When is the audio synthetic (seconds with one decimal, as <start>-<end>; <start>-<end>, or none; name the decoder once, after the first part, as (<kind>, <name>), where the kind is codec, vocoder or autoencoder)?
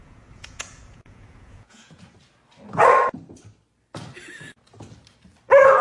0.0-2.0 (vocoder, Vocos)